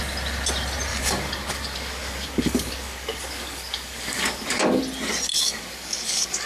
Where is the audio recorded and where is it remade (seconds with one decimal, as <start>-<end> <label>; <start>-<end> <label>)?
0.0-0.9 recorded; 0.9-4.8 remade; 4.8-5.3 recorded; 5.3-6.5 remade